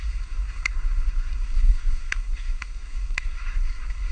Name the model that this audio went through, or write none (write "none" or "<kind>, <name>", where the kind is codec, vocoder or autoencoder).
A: codec, SNAC